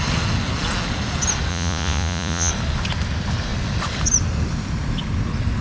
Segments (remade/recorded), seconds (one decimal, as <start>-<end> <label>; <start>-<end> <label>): 0.0-1.5 recorded; 1.5-2.5 remade; 2.5-5.6 recorded